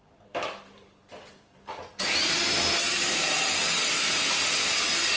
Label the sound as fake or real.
fake